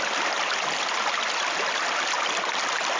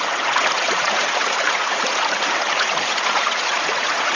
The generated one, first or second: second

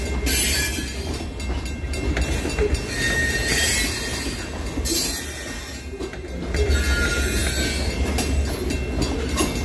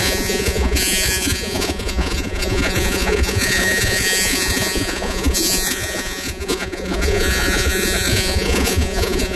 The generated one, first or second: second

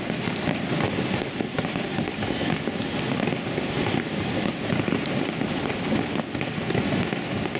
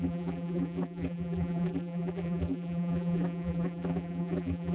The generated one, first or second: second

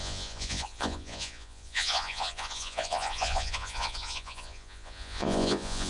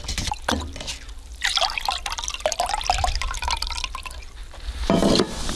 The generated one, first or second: first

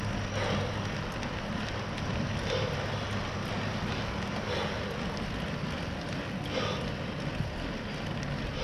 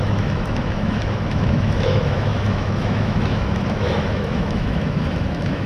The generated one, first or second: second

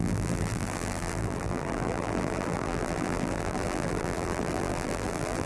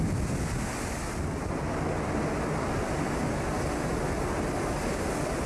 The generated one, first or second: first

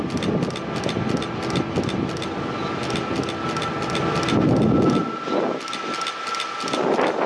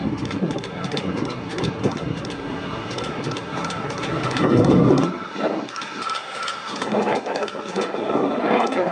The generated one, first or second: second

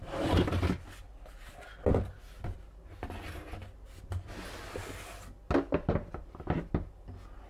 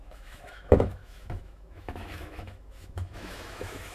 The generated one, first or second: second